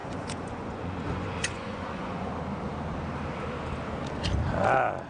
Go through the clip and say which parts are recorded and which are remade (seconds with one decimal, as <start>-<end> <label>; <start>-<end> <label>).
0.0-2.3 remade; 2.3-5.1 recorded

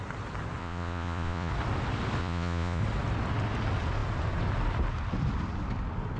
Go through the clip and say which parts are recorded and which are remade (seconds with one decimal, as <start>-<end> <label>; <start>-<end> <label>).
0.0-0.6 recorded; 0.6-1.5 remade; 1.5-2.2 recorded; 2.2-2.8 remade; 2.8-6.2 recorded

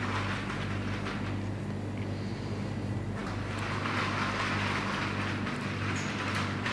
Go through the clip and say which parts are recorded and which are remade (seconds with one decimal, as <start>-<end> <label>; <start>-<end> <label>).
0.0-6.7 recorded

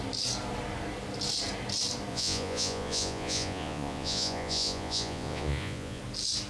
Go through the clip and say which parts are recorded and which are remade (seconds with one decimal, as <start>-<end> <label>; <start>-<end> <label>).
0.0-2.1 recorded; 2.1-6.0 remade; 6.0-6.5 recorded

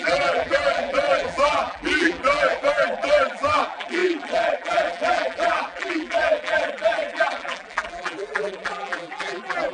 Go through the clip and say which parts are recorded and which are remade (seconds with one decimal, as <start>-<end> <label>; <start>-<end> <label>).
0.0-9.7 remade

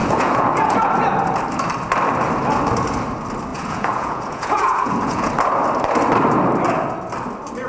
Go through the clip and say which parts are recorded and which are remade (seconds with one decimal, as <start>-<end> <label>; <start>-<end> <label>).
0.0-0.9 remade; 0.9-3.5 recorded; 3.5-5.3 remade; 5.3-7.7 recorded

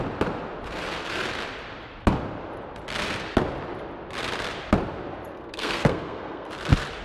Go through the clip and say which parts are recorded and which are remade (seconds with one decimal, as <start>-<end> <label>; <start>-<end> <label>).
0.0-5.3 recorded; 5.3-6.5 remade; 6.5-7.0 recorded